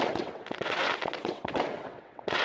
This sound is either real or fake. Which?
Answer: fake